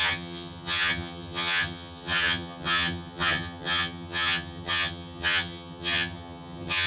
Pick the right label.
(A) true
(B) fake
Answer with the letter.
B